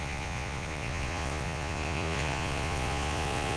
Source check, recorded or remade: remade